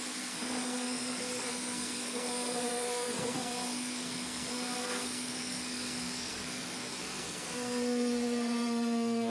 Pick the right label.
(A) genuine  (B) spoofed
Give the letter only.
B